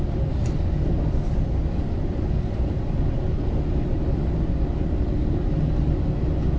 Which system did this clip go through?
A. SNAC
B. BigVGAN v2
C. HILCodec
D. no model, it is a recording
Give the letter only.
D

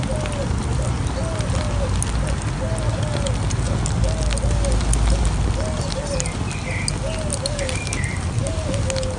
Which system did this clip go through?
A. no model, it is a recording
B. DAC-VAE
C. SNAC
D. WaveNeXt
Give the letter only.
A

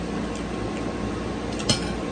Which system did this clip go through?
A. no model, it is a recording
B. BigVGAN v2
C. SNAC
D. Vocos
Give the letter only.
A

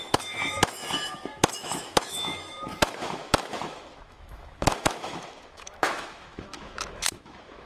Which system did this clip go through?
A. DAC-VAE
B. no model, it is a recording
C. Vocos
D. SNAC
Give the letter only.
A